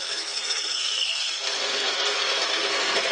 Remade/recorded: remade